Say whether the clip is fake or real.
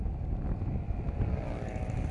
real